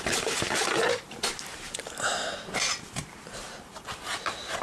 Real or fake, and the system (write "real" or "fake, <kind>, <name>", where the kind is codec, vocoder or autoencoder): fake, vocoder, BigVGAN v2